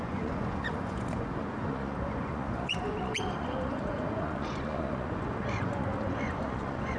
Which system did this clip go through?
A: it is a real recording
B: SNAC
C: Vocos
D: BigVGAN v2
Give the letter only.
C